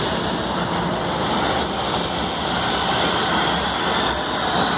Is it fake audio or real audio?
real